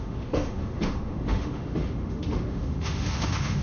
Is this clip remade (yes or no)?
yes